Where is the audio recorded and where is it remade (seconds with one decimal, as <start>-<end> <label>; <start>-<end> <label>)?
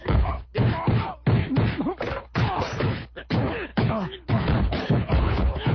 0.0-0.6 remade; 0.6-2.2 recorded; 2.2-5.7 remade